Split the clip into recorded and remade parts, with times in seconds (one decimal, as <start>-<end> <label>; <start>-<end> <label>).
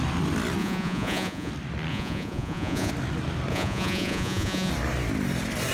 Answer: 0.0-0.6 recorded; 0.6-1.5 remade; 1.5-1.9 recorded; 1.9-2.9 remade; 2.9-3.5 recorded; 3.5-4.7 remade; 4.7-5.7 recorded